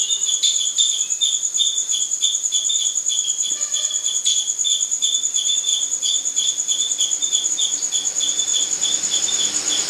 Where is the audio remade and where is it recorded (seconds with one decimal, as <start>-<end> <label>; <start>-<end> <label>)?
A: 0.0-8.5 recorded; 8.5-9.2 remade; 9.2-9.9 recorded